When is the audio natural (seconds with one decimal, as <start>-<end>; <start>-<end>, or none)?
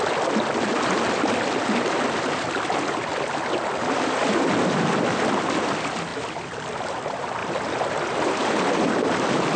0.0-6.1; 6.7-7.4; 8.0-9.6